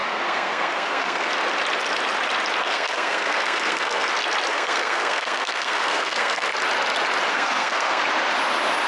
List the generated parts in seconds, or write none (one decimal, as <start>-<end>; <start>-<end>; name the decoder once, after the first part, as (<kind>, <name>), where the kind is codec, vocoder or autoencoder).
0.0-1.3 (codec, SNAC); 2.6-4.1; 4.5-6.5; 7.3-8.0

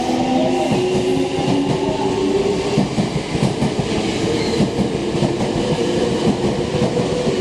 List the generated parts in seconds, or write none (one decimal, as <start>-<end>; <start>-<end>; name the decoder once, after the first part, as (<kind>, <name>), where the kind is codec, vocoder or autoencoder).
5.0-6.0 (vocoder, BigVGAN v2)